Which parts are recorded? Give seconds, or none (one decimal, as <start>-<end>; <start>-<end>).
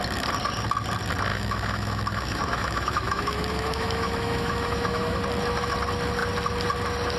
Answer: 0.0-1.3; 5.2-7.2